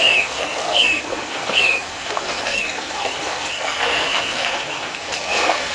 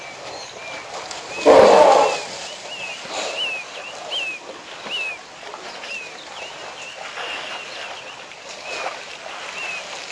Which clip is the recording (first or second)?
second